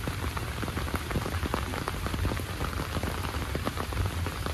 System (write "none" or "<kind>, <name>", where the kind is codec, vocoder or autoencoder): none